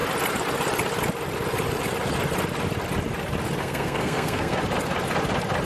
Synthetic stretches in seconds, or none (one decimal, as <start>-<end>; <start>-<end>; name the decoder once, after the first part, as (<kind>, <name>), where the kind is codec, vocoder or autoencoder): 3.6-4.6 (codec, SNAC)